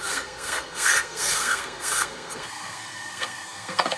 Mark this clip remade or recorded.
remade